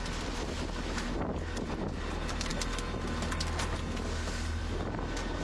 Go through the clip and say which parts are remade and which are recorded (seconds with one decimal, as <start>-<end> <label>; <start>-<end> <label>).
0.0-5.4 recorded